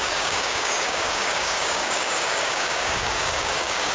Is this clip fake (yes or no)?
yes